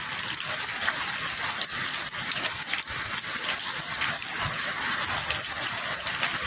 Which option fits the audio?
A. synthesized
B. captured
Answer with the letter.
B